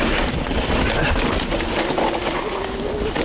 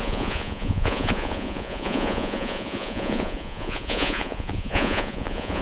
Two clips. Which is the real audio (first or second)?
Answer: first